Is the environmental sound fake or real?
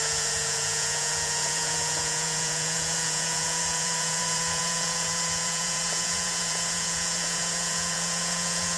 fake